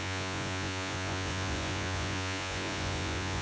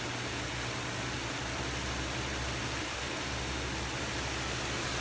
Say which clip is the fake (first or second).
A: first